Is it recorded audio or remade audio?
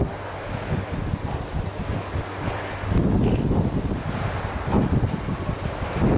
recorded